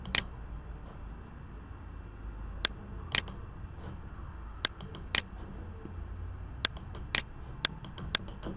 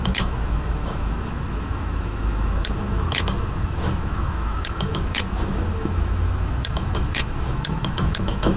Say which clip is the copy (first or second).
second